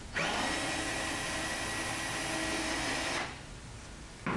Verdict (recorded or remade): recorded